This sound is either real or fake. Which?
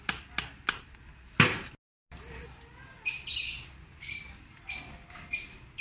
real